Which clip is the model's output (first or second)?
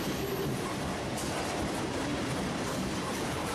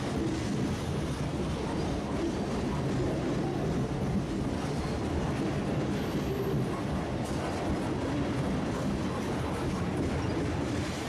first